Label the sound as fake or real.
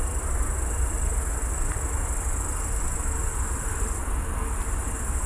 real